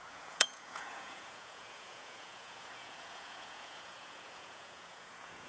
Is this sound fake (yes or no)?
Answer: yes